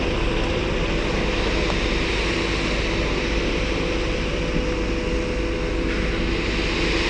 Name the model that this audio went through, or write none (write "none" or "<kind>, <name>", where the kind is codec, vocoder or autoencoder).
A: none